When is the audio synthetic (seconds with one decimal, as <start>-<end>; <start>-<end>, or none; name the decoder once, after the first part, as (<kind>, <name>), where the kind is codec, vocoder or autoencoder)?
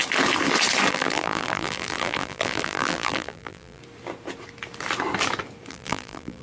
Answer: 0.9-3.8 (vocoder, BigVGAN v2); 5.7-6.4